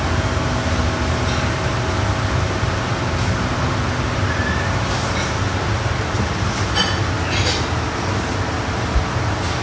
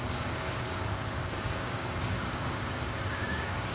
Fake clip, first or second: second